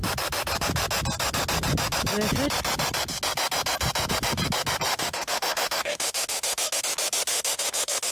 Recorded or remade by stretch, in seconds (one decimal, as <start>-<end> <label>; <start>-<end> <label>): 0.0-4.9 recorded; 4.9-6.8 remade; 6.8-7.3 recorded; 7.3-8.1 remade